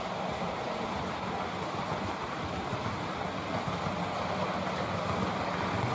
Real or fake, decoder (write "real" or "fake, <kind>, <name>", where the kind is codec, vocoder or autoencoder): real